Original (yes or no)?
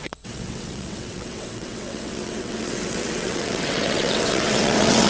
no